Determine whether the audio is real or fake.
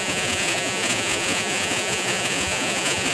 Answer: fake